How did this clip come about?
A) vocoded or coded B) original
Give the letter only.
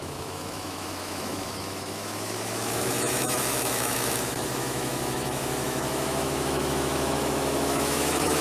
A